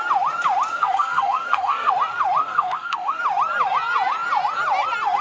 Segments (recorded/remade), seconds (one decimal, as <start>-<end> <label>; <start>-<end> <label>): 0.0-0.7 recorded; 0.7-1.9 remade; 1.9-2.4 recorded; 2.4-3.2 remade; 3.2-5.2 recorded